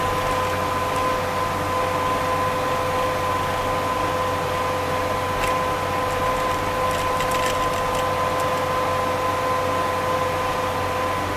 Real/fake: real